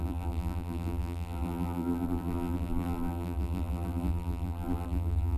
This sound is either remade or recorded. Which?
remade